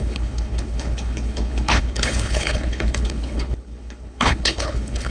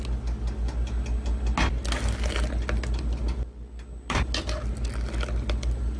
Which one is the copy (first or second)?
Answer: first